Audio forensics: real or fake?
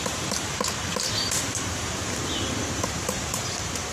fake